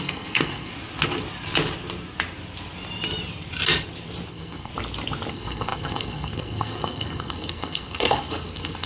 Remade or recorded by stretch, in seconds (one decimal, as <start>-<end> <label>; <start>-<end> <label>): 0.0-0.7 remade; 0.7-4.3 recorded; 4.3-4.7 remade; 4.7-5.3 recorded; 5.3-8.9 remade

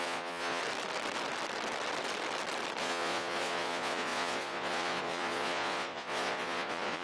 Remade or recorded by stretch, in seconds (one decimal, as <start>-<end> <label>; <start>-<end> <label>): 0.0-0.6 remade; 0.6-2.8 recorded; 2.8-7.0 remade

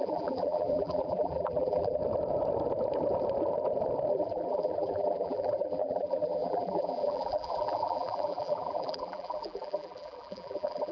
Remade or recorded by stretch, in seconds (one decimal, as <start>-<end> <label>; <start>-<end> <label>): 0.0-2.0 remade; 2.0-4.1 recorded; 4.1-10.9 remade

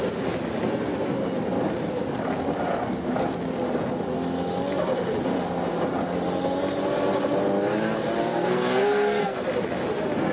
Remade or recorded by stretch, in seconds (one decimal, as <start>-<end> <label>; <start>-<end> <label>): 0.0-8.2 recorded; 8.2-9.4 remade; 9.4-10.3 recorded

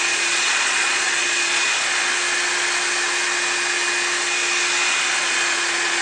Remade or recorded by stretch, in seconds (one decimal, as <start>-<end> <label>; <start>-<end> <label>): 0.0-1.6 remade; 1.6-5.2 recorded; 5.2-6.0 remade

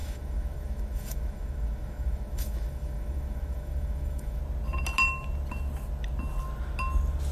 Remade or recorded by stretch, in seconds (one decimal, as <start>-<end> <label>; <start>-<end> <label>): 0.0-4.4 remade; 4.4-7.3 recorded